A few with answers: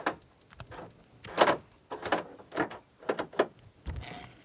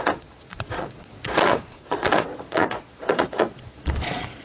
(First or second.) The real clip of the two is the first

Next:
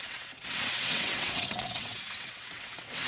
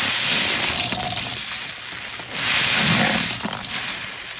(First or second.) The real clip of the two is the second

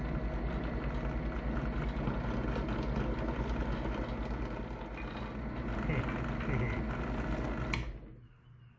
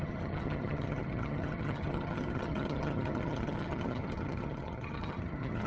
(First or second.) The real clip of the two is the first